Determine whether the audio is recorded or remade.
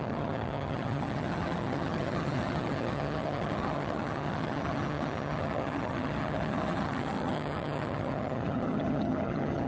remade